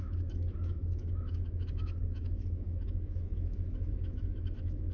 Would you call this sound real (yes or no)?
no